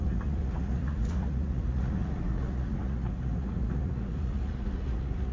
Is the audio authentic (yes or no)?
no